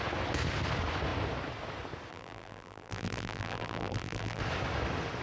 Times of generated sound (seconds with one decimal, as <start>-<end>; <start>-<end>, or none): 2.1-4.4